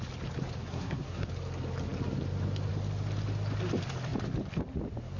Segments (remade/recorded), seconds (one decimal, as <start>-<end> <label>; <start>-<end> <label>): 0.0-0.6 recorded; 0.6-1.3 remade; 1.3-5.2 recorded